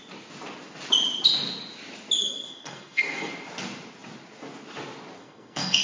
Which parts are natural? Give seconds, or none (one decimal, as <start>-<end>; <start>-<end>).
0.0-2.2; 3.3-5.2